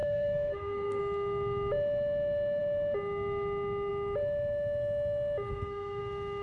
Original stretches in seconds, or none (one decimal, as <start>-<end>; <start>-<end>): 1.0-5.5; 6.0-6.4